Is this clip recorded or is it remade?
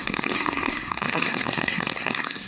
remade